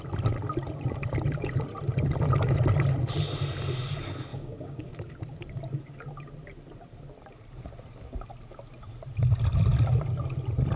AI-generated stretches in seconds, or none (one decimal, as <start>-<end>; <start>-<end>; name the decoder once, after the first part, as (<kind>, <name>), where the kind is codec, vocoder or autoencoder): 4.3-4.9 (codec, DAC)